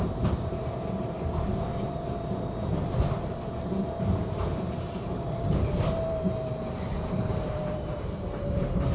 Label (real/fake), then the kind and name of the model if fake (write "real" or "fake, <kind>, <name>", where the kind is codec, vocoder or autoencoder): fake, vocoder, BigVGAN v2